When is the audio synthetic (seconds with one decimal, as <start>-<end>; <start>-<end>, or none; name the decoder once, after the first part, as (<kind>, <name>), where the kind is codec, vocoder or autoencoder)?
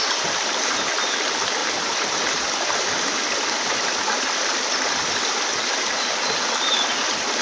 1.6-5.5 (vocoder, BigVGAN v2)